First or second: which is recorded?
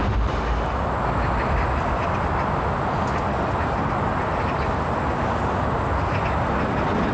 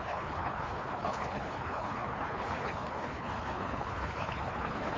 first